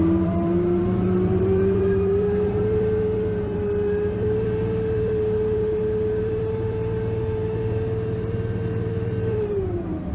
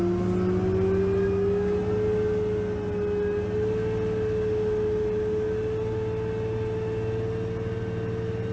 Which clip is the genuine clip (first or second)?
second